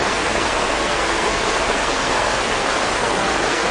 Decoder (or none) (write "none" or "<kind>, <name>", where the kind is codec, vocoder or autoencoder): codec, SNAC